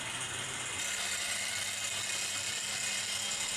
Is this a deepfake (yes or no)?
yes